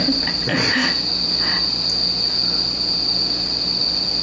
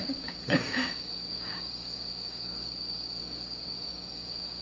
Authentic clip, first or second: first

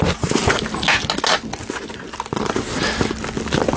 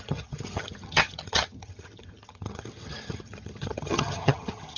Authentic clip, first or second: first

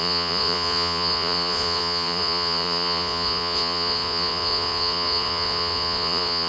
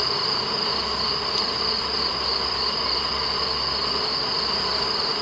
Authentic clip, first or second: second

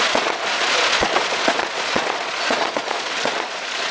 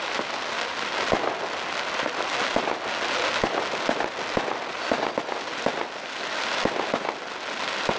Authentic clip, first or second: second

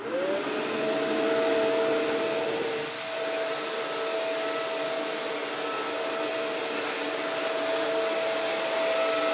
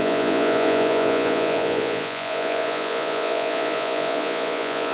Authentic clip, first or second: first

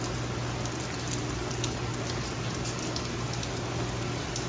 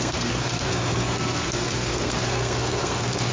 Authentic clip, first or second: first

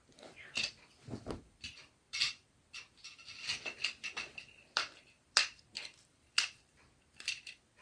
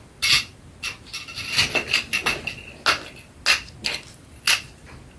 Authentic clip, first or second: second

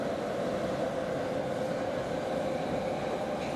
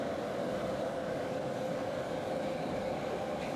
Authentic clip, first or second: first